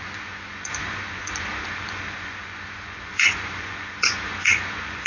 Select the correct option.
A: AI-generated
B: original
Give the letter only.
A